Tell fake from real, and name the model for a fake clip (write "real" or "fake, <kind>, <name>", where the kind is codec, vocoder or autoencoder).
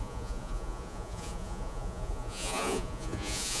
fake, vocoder, Vocos